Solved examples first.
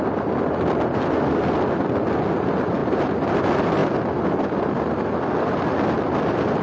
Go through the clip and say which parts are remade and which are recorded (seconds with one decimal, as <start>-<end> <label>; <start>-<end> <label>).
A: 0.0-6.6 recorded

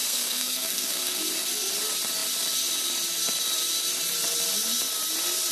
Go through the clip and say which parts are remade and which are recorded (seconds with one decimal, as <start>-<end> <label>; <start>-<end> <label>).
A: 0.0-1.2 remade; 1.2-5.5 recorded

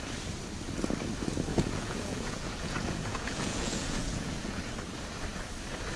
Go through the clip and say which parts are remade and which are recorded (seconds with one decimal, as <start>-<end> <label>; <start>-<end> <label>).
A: 0.0-1.5 recorded; 1.5-4.6 remade; 4.6-6.0 recorded

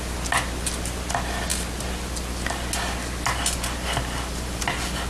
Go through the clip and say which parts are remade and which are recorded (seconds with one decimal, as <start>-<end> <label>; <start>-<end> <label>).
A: 0.0-5.1 recorded

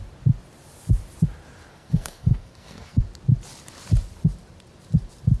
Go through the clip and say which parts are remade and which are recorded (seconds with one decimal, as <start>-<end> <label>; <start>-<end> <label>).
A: 0.0-1.7 recorded; 1.7-3.0 remade; 3.0-5.4 recorded

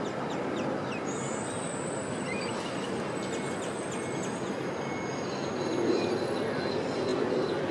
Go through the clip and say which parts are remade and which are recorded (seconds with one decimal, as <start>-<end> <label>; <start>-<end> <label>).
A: 0.0-7.7 recorded